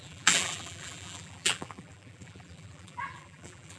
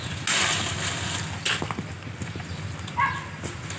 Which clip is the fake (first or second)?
first